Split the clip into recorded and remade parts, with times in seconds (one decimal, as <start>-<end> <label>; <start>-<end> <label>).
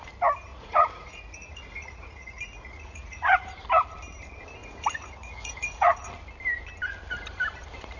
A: 0.0-0.5 recorded; 0.5-3.5 remade; 3.5-4.6 recorded; 4.6-6.1 remade; 6.1-8.0 recorded